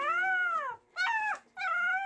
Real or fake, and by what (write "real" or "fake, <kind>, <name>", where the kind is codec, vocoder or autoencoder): real